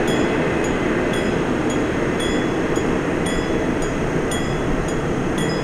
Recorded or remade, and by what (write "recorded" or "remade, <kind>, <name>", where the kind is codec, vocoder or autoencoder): recorded